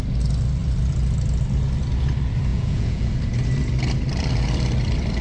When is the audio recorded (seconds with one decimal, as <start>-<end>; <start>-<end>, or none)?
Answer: 0.0-2.5; 3.1-5.2